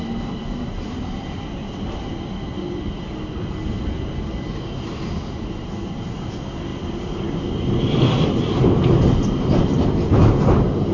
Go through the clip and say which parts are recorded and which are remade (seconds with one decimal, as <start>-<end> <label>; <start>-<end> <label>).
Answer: 0.0-10.9 recorded